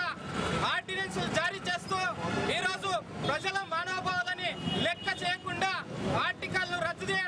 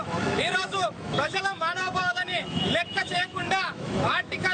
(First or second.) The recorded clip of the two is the first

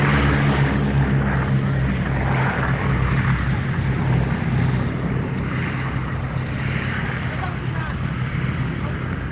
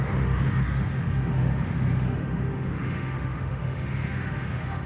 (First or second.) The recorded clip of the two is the first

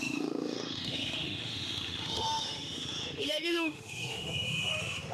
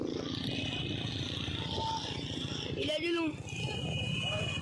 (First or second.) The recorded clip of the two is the second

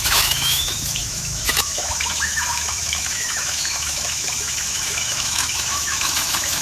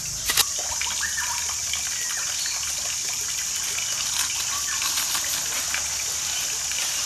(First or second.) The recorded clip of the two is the second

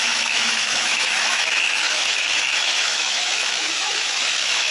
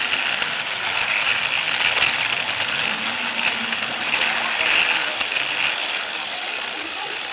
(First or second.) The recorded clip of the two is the second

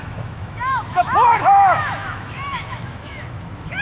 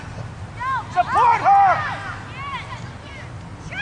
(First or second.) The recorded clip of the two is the second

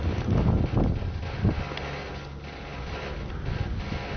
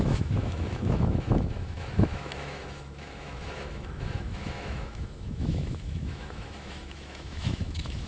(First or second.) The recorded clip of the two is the first